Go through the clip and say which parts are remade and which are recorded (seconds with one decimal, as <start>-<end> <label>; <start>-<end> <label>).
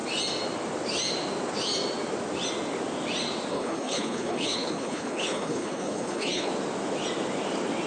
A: 0.0-3.5 recorded; 3.5-6.5 remade; 6.5-7.9 recorded